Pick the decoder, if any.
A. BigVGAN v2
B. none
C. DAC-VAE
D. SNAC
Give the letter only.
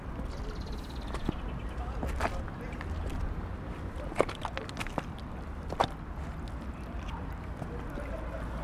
B